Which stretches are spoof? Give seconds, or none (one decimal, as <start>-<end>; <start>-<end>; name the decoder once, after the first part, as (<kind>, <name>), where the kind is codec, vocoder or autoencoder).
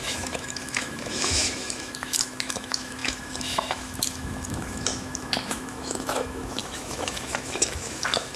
0.0-8.4 (autoencoder, DAC-VAE)